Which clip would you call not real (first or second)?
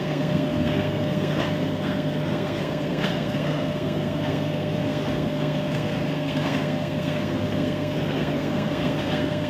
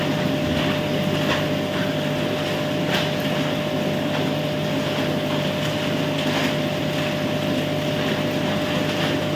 first